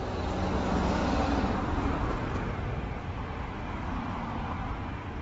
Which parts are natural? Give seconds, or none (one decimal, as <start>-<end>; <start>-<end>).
0.0-1.0; 4.1-5.2